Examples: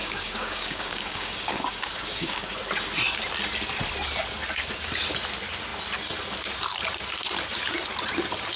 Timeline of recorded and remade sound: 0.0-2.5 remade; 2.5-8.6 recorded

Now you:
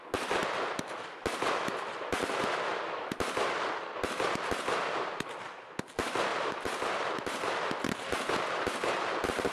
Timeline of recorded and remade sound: 0.0-6.3 recorded; 6.3-7.6 remade; 7.6-9.5 recorded

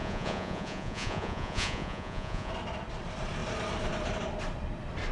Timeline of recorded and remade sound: 0.0-2.5 remade; 2.5-5.1 recorded